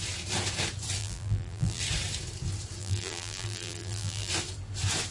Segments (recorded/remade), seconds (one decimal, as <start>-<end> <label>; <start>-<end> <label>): 0.0-1.0 recorded; 1.0-1.8 remade; 1.8-2.8 recorded; 2.8-4.3 remade; 4.3-5.1 recorded